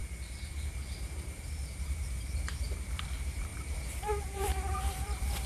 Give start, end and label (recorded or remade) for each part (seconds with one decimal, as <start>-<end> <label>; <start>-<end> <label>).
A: 0.0-5.5 remade